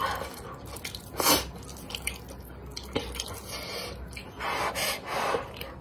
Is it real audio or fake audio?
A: real